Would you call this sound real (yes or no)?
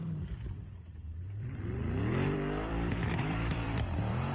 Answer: no